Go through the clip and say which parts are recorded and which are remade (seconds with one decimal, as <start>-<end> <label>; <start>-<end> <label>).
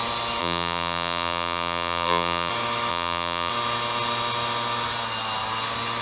0.0-0.4 recorded; 0.4-2.5 remade; 2.5-2.9 recorded; 2.9-3.5 remade; 3.5-6.0 recorded